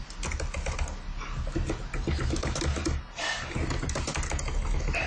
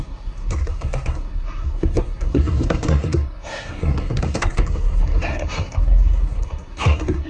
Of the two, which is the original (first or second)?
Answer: first